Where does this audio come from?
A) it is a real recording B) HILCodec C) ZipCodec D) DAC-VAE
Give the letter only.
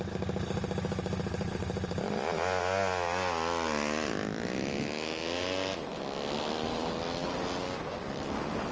A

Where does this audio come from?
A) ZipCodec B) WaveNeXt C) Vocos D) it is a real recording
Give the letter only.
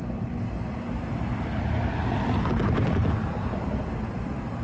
D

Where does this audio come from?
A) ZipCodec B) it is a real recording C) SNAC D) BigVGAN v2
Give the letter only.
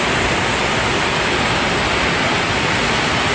B